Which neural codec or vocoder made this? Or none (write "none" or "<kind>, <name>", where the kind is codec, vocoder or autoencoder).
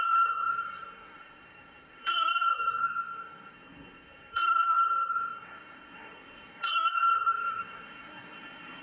codec, SNAC